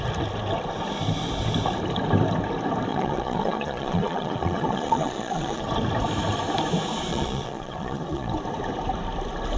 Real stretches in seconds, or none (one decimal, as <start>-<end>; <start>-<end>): 0.0-2.9; 5.6-7.1; 8.3-9.6